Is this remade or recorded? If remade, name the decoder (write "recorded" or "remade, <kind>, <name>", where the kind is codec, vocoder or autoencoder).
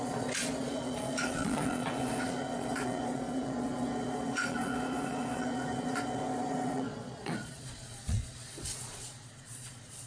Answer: remade, vocoder, Vocos